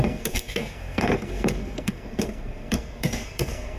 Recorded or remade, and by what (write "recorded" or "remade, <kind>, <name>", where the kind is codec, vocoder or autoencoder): remade, codec, SNAC